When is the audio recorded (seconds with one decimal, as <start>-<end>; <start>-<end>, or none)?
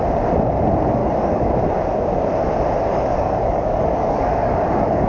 0.0-1.0; 1.5-2.9